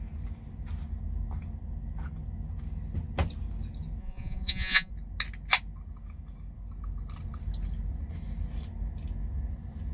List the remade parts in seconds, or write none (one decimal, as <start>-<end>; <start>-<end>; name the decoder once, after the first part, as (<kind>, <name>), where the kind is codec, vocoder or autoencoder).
4.0-4.9 (vocoder, Vocos)